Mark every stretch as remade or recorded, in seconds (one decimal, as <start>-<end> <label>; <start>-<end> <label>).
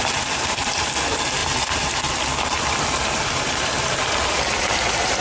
0.0-1.4 recorded; 1.4-4.5 remade; 4.5-5.2 recorded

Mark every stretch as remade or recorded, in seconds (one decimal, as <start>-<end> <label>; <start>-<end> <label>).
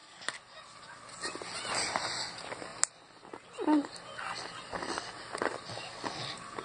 0.0-6.6 recorded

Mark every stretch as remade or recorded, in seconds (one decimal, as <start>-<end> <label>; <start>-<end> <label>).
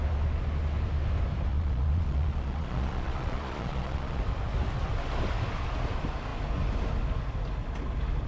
0.0-1.5 recorded; 1.5-4.2 remade; 4.2-8.3 recorded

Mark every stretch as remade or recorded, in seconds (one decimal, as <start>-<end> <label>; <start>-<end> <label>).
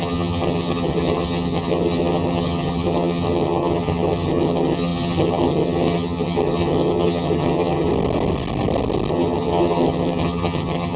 0.0-7.9 remade; 7.9-9.1 recorded; 9.1-11.0 remade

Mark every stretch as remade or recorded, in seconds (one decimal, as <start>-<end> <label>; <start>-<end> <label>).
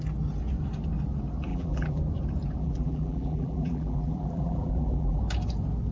0.0-1.5 recorded; 1.5-2.0 remade; 2.0-2.6 recorded; 2.6-5.2 remade; 5.2-5.9 recorded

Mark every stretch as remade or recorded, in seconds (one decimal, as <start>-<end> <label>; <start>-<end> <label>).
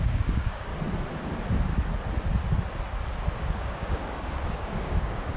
0.0-0.7 remade; 0.7-3.4 recorded; 3.4-5.4 remade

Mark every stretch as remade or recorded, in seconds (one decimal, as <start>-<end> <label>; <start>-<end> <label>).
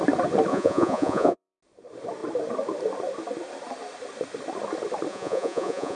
0.0-0.5 recorded; 0.5-1.6 remade; 1.6-5.1 recorded; 5.1-6.0 remade